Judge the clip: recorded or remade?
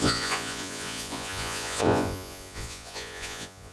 remade